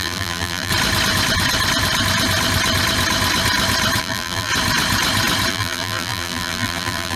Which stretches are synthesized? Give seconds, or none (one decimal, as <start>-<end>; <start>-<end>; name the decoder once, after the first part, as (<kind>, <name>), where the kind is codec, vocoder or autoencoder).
0.0-0.7 (vocoder, BigVGAN v2); 4.0-4.5; 5.5-7.2